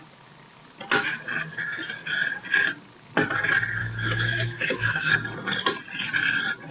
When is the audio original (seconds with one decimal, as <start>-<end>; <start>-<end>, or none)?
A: 0.0-3.8; 5.1-6.7